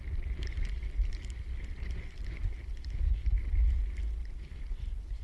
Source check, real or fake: real